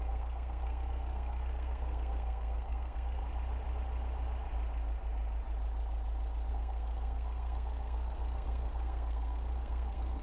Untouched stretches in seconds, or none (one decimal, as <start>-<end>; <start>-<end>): 3.2-6.5